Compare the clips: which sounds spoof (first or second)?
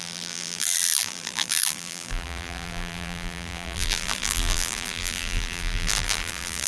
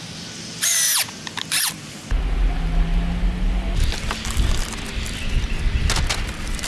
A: first